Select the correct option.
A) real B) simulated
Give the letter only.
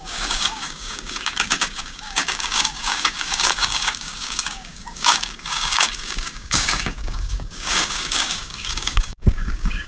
B